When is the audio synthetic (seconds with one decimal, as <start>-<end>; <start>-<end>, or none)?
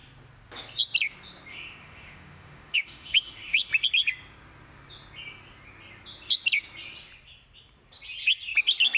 1.5-3.7